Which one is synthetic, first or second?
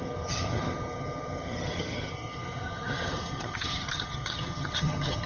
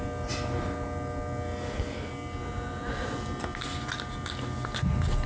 first